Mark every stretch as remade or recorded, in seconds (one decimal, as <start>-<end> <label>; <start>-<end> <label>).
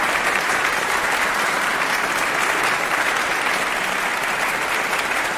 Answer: 0.0-1.7 remade; 1.7-4.9 recorded; 4.9-5.4 remade